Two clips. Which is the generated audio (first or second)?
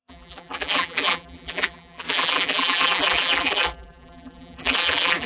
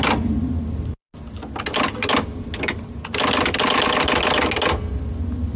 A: first